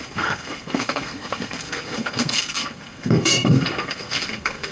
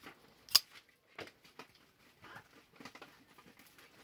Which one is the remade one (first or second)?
first